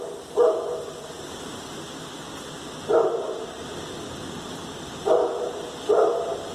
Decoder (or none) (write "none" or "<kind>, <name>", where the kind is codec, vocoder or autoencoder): none